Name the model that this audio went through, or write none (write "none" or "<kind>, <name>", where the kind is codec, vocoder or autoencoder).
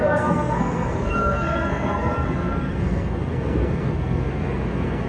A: codec, SNAC